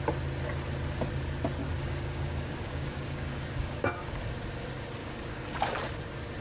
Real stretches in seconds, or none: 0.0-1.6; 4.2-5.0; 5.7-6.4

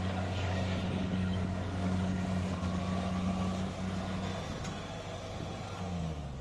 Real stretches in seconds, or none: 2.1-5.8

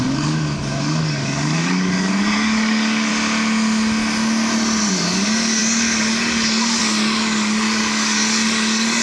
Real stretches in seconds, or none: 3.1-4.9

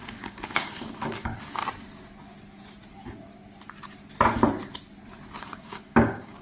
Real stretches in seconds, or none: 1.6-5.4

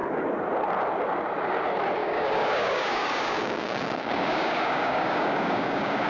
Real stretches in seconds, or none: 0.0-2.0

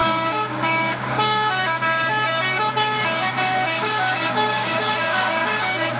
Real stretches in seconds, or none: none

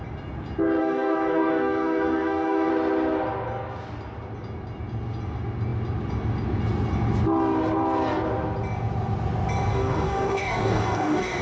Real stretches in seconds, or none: 0.0-0.8; 2.7-9.7